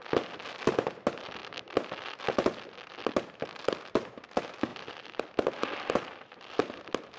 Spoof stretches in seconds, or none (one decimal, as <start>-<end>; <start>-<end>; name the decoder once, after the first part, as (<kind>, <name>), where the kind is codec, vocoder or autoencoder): none